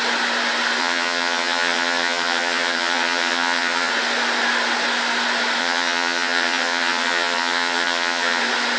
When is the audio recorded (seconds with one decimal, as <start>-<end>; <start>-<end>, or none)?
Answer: 0.0-0.8; 3.9-5.6; 8.4-8.8